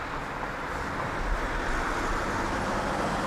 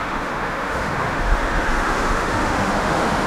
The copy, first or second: second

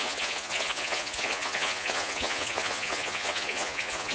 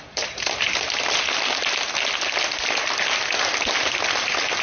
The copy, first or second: first